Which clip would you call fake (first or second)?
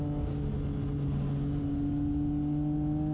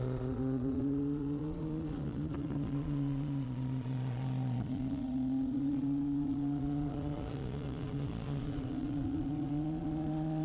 second